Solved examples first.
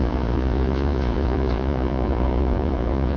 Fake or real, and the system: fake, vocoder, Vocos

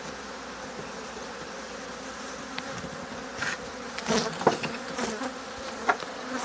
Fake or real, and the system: real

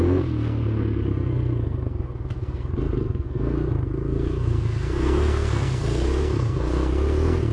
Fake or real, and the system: fake, codec, SNAC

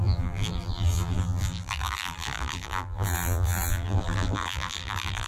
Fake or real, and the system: fake, vocoder, BigVGAN v2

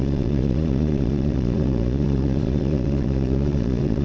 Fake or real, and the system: fake, vocoder, Vocos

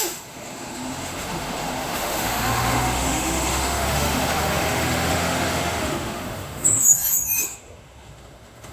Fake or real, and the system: fake, autoencoder, DAC-VAE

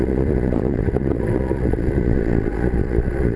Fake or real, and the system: fake, vocoder, Vocos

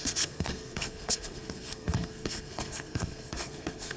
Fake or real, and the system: fake, codec, SNAC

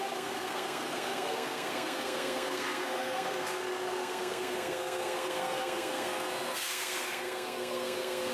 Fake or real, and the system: fake, codec, SNAC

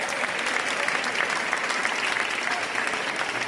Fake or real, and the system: real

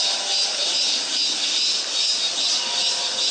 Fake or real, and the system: real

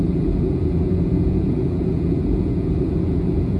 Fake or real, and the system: fake, vocoder, Vocos